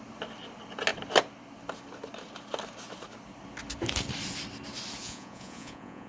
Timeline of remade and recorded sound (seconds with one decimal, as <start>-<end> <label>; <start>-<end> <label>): 0.0-5.0 recorded; 5.0-6.1 remade